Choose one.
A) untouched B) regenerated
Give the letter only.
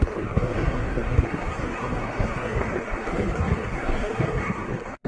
B